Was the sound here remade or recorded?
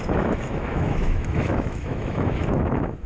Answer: remade